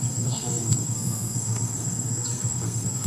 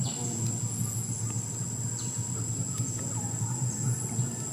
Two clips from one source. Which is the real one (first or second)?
second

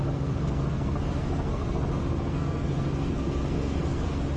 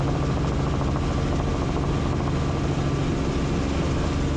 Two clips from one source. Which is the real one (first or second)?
second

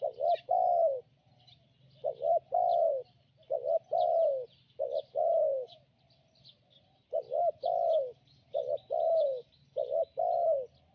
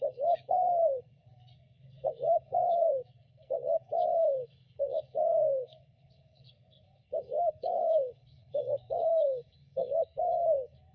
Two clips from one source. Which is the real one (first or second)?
first